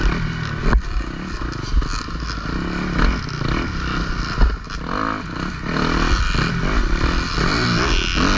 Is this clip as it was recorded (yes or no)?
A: yes